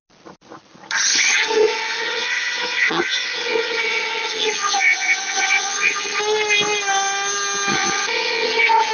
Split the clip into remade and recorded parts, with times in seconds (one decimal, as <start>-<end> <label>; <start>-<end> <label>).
0.0-1.1 recorded; 1.1-6.2 remade; 6.2-7.7 recorded; 7.7-8.9 remade